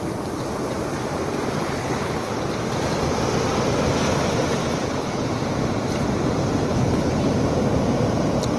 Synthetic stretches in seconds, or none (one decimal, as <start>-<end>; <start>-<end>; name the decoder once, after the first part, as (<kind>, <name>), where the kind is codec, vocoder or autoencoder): 1.6-2.4 (codec, HILCodec); 4.8-5.3; 6.7-7.3